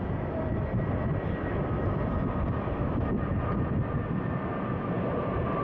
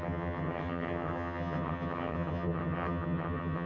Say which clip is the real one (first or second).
first